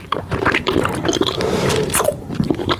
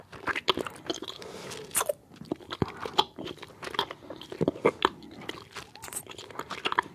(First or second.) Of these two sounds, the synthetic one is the first